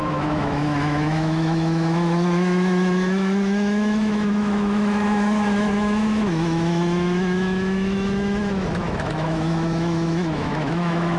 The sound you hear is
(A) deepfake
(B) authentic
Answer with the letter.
A